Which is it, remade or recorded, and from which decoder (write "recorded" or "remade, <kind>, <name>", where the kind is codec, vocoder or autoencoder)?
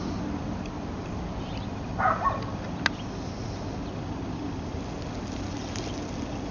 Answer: recorded